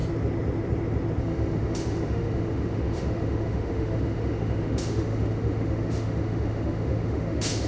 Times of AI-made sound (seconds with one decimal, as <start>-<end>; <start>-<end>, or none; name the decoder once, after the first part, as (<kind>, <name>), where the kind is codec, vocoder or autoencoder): 1.2-7.7 (autoencoder, DAC-VAE)